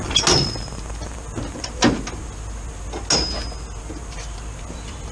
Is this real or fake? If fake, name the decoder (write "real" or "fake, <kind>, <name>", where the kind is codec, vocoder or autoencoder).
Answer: real